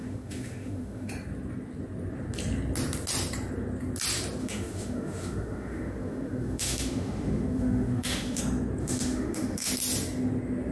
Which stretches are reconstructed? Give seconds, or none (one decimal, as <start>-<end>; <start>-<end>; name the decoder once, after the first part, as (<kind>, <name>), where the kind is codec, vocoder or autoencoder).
0.0-1.1 (autoencoder, DAC-VAE); 4.4-8.4; 8.8-9.7